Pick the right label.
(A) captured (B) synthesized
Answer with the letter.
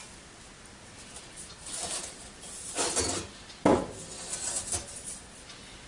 A